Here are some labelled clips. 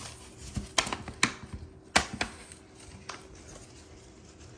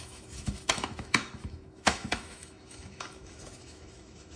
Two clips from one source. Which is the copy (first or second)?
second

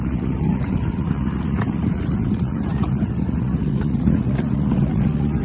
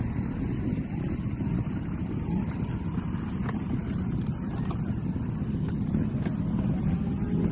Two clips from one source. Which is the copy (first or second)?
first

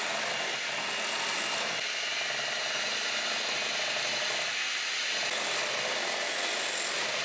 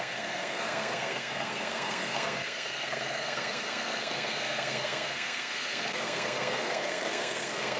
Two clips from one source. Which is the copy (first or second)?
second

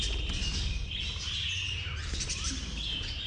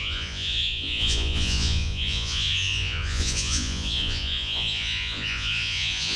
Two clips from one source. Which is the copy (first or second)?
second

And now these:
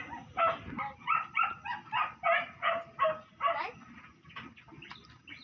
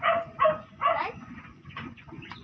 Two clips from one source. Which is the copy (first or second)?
second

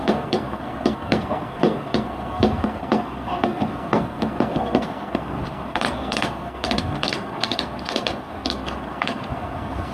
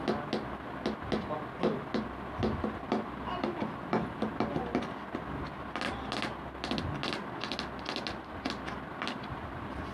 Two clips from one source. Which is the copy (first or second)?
first